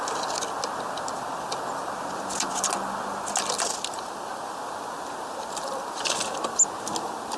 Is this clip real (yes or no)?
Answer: yes